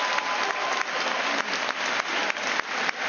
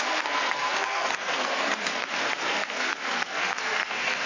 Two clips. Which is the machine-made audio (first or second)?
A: second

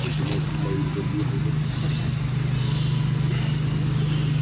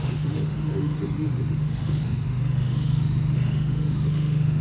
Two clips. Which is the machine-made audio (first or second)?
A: second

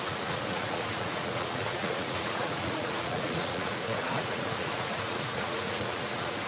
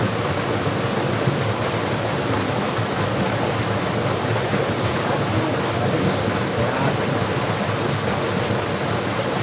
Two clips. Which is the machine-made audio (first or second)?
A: first